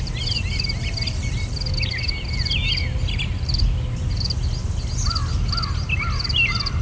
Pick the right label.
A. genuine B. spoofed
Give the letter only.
A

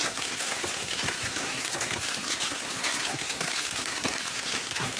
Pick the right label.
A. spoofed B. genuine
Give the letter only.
A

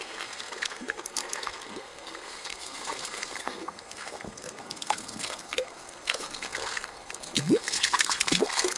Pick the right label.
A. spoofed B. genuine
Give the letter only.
A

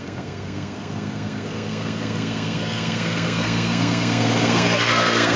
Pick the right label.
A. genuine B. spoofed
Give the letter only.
B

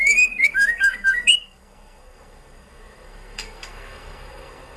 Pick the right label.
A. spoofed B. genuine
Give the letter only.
A